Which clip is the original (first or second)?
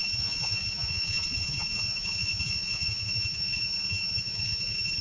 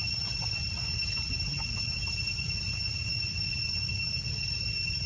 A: second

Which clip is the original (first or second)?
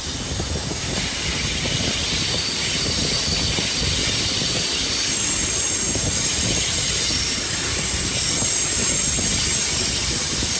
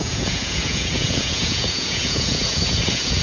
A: first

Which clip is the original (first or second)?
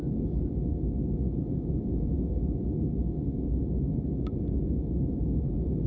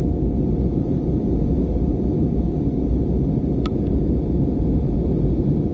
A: second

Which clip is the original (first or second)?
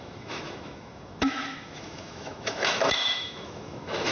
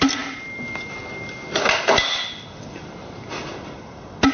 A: second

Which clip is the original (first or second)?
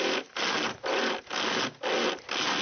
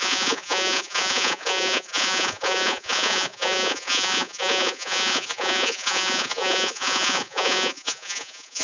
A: first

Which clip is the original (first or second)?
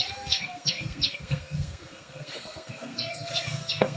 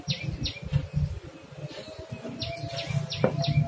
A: second